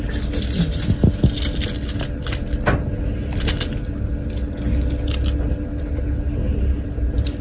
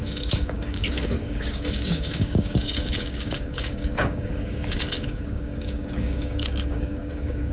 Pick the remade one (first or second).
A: second